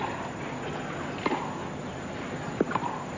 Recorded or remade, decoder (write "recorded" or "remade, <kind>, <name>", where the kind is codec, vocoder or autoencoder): recorded